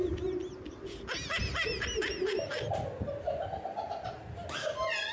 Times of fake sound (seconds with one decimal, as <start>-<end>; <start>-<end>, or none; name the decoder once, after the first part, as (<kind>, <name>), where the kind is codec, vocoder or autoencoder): none